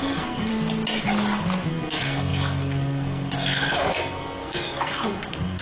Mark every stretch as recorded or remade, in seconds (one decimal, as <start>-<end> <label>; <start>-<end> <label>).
0.0-0.5 remade; 0.5-1.7 recorded; 1.7-5.6 remade